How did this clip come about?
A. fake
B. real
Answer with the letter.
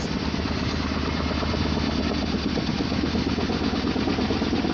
B